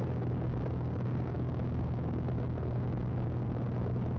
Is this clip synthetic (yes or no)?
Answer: yes